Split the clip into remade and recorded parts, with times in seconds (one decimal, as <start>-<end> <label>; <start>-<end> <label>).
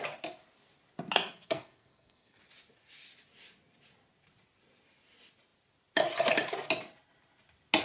0.0-1.2 recorded; 1.2-2.4 remade; 2.4-7.8 recorded